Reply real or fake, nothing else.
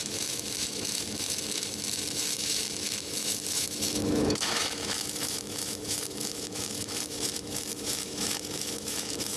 fake